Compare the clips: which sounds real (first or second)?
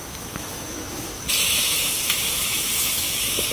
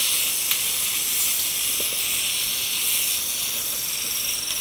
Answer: second